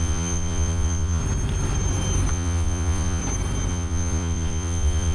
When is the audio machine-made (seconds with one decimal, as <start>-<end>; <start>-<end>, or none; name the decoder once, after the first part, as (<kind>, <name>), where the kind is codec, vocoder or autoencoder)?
0.0-1.2 (vocoder, Vocos); 2.3-3.2; 3.7-5.1